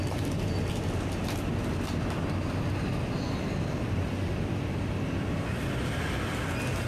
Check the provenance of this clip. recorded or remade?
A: recorded